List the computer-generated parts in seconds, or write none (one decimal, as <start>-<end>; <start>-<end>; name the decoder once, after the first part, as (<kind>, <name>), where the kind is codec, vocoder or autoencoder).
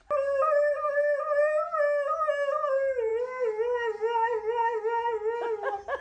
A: none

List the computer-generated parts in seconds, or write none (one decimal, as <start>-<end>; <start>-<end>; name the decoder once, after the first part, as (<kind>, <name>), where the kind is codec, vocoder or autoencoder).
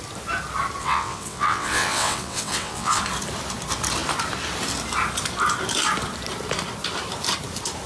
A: 0.8-3.0 (vocoder, WaveNeXt)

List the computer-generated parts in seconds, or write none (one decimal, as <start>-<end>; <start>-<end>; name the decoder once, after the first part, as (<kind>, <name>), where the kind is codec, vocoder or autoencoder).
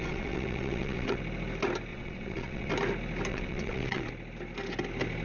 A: 0.0-1.2 (vocoder, WaveNeXt); 1.9-2.7; 3.3-4.1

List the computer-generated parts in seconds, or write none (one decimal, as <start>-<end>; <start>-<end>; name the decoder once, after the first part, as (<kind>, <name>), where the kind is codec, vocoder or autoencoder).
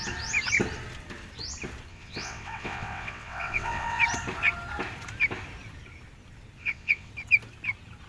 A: 1.9-4.0 (vocoder, WaveNeXt); 6.6-7.1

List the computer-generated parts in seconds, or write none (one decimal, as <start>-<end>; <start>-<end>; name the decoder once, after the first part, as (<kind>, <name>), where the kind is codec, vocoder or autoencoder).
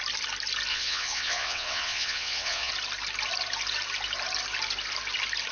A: 0.7-2.7 (vocoder, WaveNeXt)